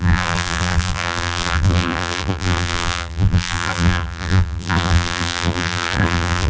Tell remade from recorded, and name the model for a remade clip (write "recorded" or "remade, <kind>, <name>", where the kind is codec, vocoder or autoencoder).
remade, vocoder, BigVGAN v2